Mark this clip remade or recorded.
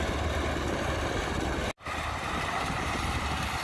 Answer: recorded